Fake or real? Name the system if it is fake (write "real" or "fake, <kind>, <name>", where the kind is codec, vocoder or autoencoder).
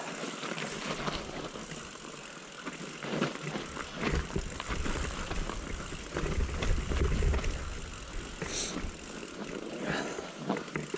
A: real